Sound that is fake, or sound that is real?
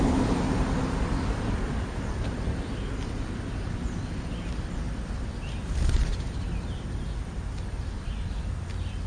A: real